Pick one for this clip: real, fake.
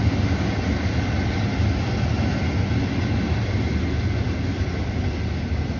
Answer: real